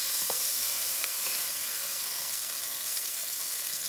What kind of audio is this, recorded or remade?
remade